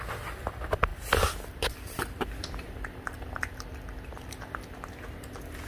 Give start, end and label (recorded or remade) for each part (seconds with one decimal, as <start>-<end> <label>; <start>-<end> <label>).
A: 0.0-0.9 recorded; 0.9-4.3 remade; 4.3-5.7 recorded